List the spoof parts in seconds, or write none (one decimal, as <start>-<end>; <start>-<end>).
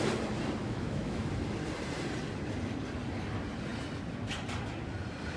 0.6-1.3